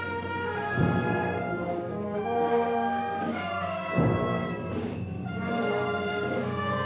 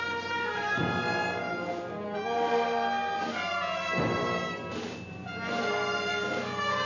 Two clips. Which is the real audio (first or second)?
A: second